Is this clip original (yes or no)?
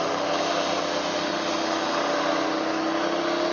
yes